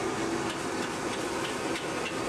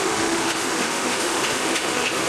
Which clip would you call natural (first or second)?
first